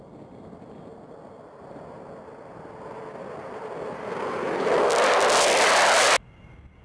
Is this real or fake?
real